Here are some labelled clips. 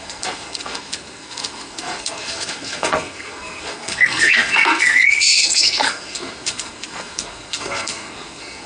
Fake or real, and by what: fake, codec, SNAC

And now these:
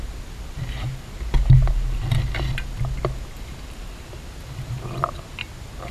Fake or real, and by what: real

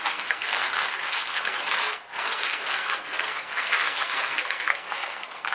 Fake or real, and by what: fake, codec, SNAC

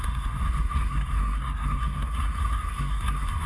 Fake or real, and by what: fake, codec, SNAC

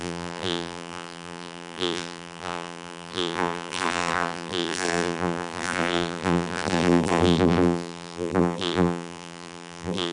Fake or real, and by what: fake, vocoder, BigVGAN v2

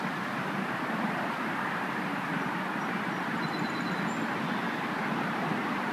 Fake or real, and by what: real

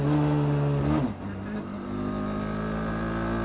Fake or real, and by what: real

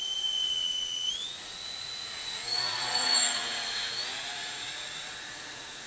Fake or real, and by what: fake, vocoder, Vocos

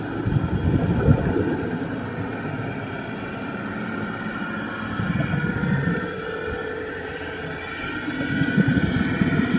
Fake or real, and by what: real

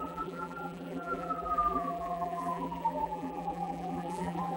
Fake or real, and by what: fake, vocoder, BigVGAN v2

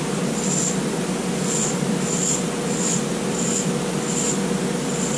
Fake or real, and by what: real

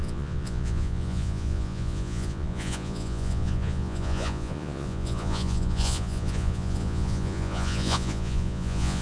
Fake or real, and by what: fake, vocoder, Vocos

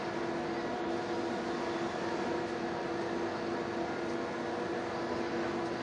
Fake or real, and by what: real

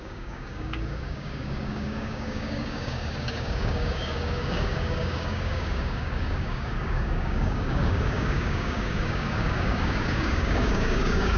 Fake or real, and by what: fake, codec, DAC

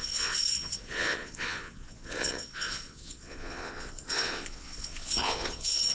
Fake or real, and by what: fake, vocoder, Vocos